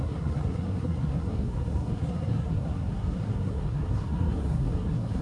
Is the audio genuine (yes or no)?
no